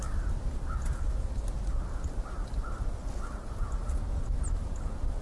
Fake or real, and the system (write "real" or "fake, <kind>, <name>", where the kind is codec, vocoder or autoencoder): real